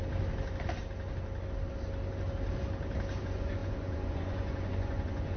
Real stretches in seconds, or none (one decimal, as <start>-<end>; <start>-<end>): 0.0-3.2